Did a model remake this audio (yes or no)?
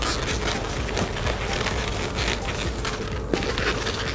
no